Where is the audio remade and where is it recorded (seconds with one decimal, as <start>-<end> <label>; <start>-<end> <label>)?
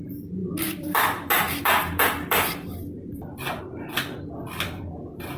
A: 0.0-5.4 remade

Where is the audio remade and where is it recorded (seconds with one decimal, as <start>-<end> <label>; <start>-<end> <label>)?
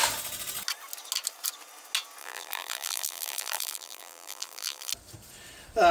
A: 0.0-2.2 recorded; 2.2-4.9 remade; 4.9-5.9 recorded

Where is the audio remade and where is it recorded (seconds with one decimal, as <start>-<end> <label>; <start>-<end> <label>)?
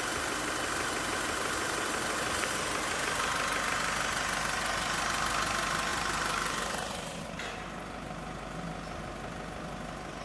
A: 0.0-5.9 recorded; 5.9-7.2 remade; 7.2-10.2 recorded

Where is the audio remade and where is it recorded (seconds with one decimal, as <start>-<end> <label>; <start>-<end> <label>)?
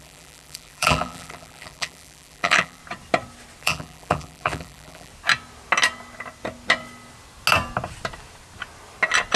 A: 0.0-2.8 remade; 2.8-3.6 recorded; 3.6-5.1 remade; 5.1-9.4 recorded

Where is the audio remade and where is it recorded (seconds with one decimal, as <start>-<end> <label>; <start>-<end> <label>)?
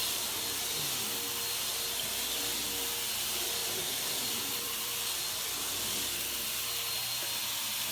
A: 0.0-3.6 recorded; 3.6-5.0 remade; 5.0-7.9 recorded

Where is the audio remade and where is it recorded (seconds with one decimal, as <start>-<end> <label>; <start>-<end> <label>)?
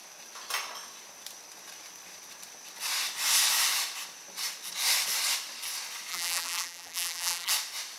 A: 0.0-6.1 recorded; 6.1-7.5 remade; 7.5-8.0 recorded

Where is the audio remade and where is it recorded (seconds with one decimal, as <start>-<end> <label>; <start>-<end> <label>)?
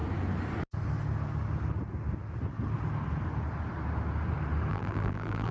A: 0.0-4.7 recorded; 4.7-5.5 remade